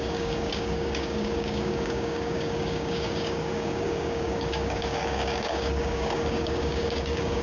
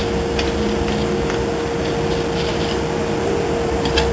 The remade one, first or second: first